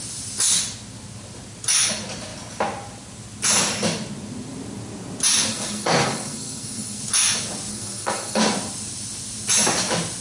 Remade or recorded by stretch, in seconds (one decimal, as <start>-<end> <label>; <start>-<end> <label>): 0.0-5.5 recorded; 5.5-7.0 remade; 7.0-7.7 recorded; 7.7-8.4 remade; 8.4-10.2 recorded